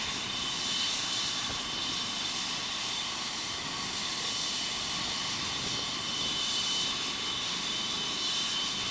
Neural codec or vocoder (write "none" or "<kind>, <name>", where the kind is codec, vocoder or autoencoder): none